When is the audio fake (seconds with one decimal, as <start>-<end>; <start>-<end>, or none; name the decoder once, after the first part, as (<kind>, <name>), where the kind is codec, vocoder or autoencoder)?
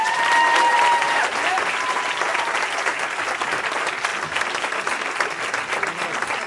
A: 0.0-1.9 (vocoder, BigVGAN v2); 2.3-3.2